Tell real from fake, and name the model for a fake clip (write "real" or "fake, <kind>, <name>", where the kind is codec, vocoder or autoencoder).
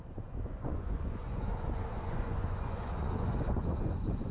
fake, vocoder, Vocos